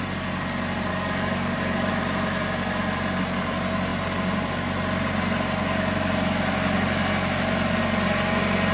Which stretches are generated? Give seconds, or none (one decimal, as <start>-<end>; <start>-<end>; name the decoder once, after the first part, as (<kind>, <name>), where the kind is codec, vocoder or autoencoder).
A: 0.9-1.9 (codec, DAC)